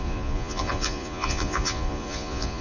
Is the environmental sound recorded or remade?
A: remade